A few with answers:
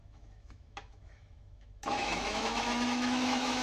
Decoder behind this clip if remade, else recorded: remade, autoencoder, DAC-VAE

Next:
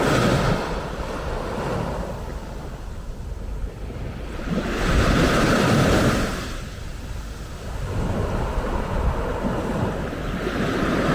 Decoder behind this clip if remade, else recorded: recorded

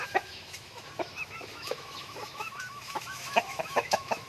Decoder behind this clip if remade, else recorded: remade, autoencoder, DAC-VAE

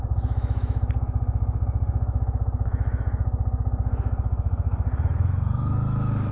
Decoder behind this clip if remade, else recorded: remade, autoencoder, DAC-VAE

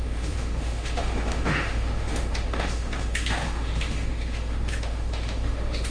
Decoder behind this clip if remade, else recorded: remade, autoencoder, DAC-VAE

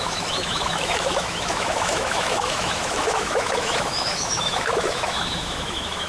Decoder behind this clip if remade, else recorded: remade, autoencoder, DAC-VAE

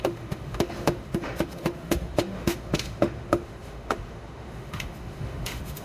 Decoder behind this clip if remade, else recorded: remade, autoencoder, DAC-VAE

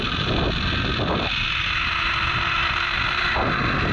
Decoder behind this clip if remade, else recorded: recorded